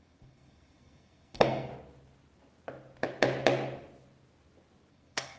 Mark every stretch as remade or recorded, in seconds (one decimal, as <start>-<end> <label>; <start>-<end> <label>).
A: 0.0-1.7 remade; 1.7-4.9 recorded; 4.9-5.4 remade